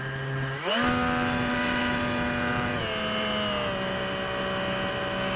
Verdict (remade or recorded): recorded